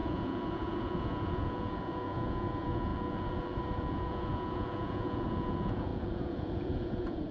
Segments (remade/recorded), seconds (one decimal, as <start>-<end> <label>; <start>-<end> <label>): 0.0-7.3 remade